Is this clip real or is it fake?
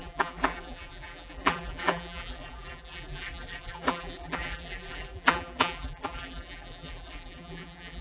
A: fake